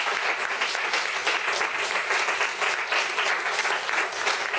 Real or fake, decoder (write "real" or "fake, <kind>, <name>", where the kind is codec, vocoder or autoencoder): real